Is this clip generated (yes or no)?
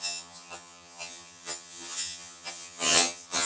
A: yes